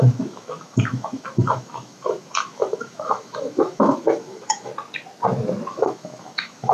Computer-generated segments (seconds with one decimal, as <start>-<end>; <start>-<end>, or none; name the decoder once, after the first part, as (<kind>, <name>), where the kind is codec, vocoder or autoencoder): 0.0-4.7 (autoencoder, DAC-VAE); 5.7-6.7